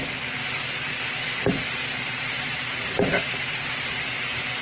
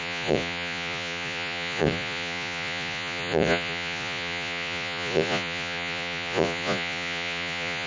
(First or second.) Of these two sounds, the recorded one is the first